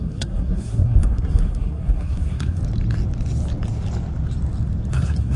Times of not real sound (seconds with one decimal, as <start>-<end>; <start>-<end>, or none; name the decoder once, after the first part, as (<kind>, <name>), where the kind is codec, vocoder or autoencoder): 0.0-2.6 (codec, SNAC); 4.9-5.4